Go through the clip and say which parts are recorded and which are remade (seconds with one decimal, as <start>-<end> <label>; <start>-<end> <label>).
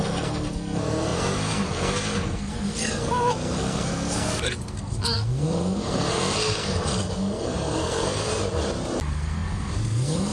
0.0-8.3 remade; 8.3-9.1 recorded; 9.1-10.3 remade